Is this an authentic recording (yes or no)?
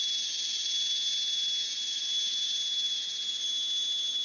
yes